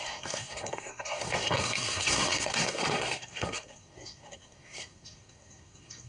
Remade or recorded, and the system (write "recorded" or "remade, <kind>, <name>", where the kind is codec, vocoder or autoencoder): remade, codec, SNAC